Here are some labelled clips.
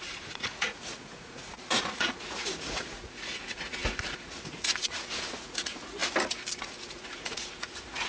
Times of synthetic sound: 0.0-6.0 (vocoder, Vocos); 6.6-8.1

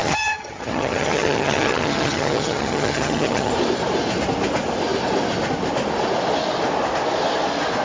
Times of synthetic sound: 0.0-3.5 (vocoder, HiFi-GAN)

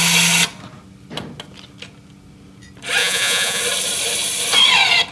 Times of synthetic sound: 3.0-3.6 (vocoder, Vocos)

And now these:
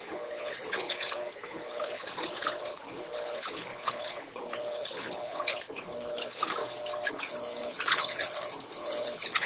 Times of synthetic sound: 0.0-6.6 (codec, HILCodec); 7.1-9.5